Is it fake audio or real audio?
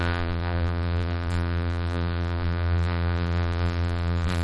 fake